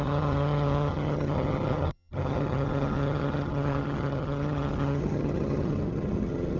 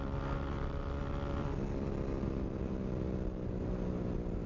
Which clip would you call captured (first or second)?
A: second